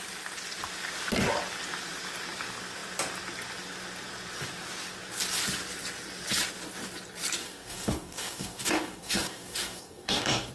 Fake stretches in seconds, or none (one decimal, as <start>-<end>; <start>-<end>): 7.4-10.5